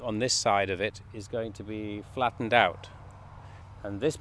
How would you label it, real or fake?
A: real